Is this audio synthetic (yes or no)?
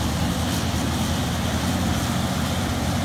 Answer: no